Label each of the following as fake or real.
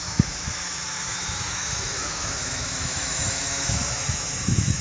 fake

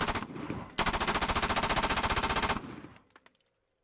real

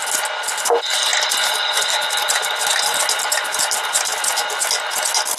real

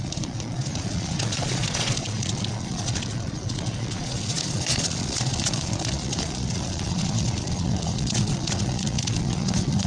fake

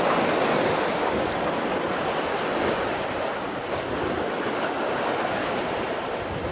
real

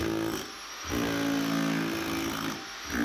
real